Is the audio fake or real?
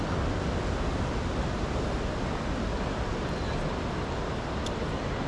real